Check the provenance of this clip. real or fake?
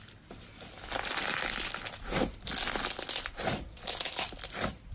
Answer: real